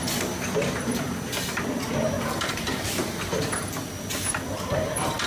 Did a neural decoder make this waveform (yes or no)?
yes